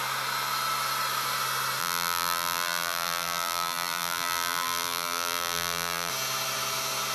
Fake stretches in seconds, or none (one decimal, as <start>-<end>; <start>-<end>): 1.8-6.1